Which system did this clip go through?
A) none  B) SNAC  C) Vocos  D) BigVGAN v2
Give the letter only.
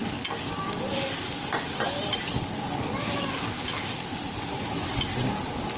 A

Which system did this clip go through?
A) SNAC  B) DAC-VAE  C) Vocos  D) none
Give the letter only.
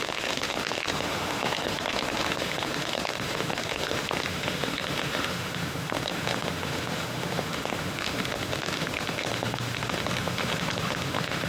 B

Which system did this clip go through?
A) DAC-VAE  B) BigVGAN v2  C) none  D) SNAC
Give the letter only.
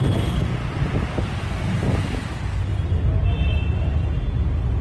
C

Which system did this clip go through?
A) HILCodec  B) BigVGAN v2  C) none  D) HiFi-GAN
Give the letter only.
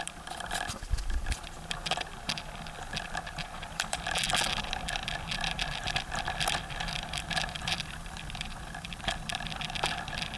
B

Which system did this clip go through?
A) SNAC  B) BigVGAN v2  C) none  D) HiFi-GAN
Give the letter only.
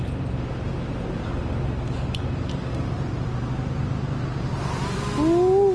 C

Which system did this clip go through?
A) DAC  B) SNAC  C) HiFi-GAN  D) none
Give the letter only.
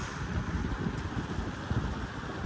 D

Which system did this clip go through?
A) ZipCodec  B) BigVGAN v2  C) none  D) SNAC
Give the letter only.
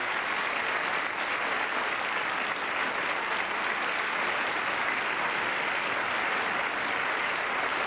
C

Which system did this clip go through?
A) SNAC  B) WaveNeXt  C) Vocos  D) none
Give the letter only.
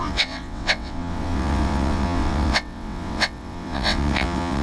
B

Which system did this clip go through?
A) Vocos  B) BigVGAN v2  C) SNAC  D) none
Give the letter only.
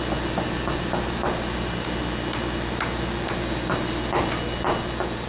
D